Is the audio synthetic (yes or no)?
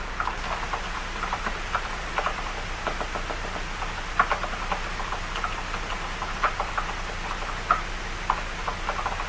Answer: no